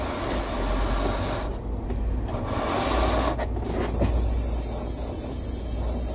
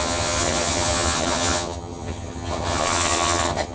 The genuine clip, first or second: first